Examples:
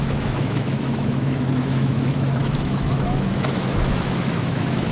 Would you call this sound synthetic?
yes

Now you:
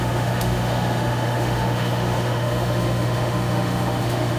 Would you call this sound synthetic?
yes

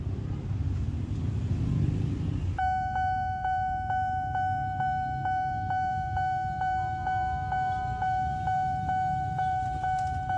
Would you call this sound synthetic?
no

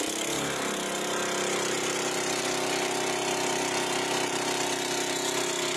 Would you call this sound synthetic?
no